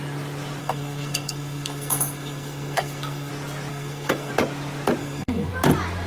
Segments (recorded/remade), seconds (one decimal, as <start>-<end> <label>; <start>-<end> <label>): 0.0-0.6 recorded; 0.6-3.3 remade; 3.3-3.7 recorded; 3.7-4.3 remade; 4.3-5.0 recorded; 5.0-5.5 remade; 5.5-6.1 recorded